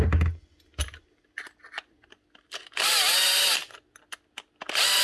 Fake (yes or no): no